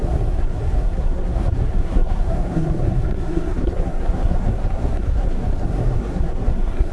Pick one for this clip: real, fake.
fake